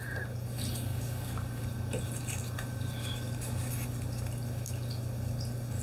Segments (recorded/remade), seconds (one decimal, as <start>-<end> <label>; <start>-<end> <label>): 0.0-0.9 recorded; 0.9-1.6 remade; 1.6-3.0 recorded; 3.0-3.7 remade; 3.7-5.8 recorded